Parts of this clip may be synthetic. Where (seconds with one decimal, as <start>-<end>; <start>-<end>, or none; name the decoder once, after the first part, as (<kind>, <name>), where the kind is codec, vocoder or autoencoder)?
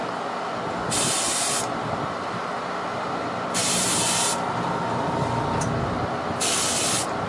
none